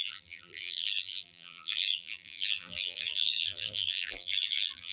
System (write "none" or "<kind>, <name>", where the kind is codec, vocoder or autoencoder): vocoder, BigVGAN v2